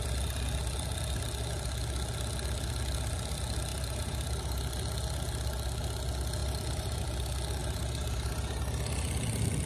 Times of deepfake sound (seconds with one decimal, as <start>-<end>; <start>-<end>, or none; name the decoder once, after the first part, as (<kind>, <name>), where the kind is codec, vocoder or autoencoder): 3.7-4.6 (vocoder, BigVGAN v2); 6.4-7.0; 7.6-8.6